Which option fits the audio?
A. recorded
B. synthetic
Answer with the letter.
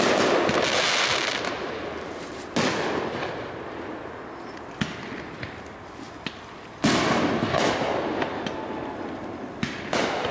A